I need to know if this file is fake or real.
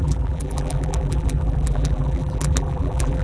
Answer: fake